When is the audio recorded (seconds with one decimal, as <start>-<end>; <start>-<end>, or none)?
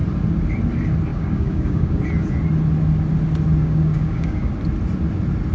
0.0-1.1; 2.0-3.6; 4.5-5.5